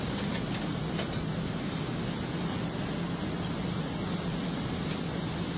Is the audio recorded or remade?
recorded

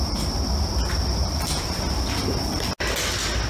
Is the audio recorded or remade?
recorded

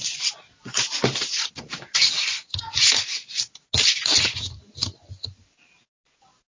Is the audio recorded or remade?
recorded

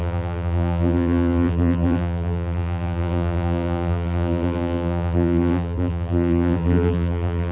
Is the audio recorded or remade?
remade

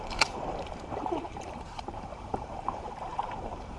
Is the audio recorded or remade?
remade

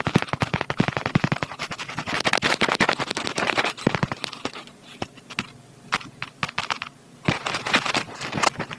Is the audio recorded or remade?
remade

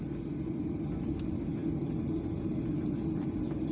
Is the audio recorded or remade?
recorded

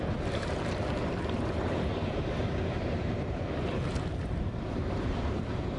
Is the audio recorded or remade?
remade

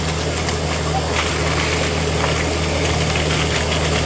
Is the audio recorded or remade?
recorded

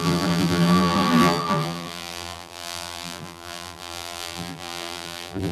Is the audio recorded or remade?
remade